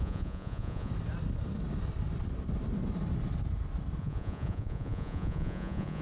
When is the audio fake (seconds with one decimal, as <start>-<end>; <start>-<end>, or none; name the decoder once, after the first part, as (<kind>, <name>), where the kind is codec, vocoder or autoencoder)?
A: 0.0-0.9 (vocoder, Vocos); 4.0-6.0